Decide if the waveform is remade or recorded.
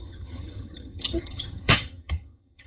remade